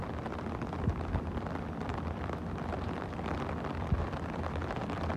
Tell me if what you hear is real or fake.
fake